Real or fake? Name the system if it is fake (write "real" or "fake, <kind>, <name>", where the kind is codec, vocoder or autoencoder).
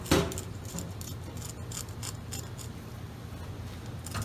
real